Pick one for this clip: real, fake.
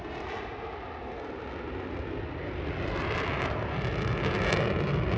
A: real